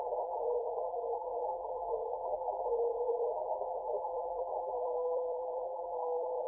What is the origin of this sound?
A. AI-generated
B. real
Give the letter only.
A